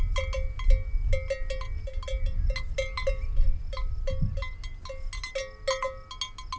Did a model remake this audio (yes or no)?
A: no